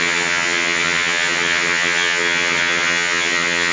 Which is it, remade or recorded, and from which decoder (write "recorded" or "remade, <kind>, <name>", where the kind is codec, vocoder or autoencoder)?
remade, vocoder, HiFi-GAN